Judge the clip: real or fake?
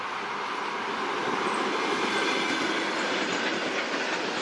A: real